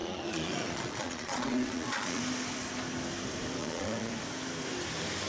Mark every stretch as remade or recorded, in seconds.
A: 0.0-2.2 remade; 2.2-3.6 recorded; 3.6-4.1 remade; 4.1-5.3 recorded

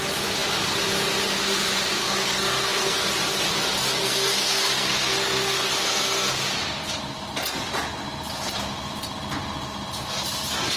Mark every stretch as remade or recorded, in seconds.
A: 0.0-2.0 recorded; 2.0-3.1 remade; 3.1-4.0 recorded; 4.0-6.3 remade; 6.3-10.8 recorded

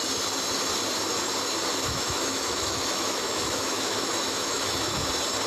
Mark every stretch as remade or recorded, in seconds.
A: 0.0-1.8 recorded; 1.8-5.1 remade; 5.1-5.5 recorded

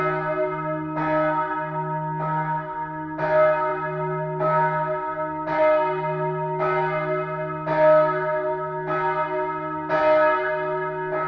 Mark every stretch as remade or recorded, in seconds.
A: 0.0-11.3 recorded

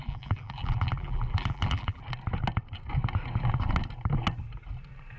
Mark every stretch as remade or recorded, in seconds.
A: 0.0-2.0 remade; 2.0-5.2 recorded

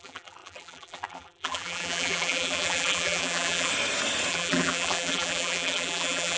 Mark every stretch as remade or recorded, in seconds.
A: 0.0-3.7 remade; 3.7-4.3 recorded; 4.3-6.4 remade